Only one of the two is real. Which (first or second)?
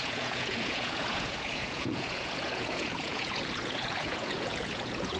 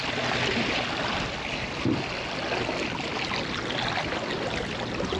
second